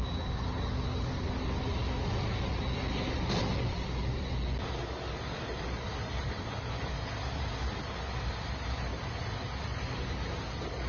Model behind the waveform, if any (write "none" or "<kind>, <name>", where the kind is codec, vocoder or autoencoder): none